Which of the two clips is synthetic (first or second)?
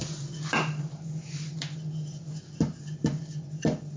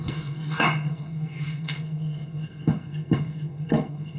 second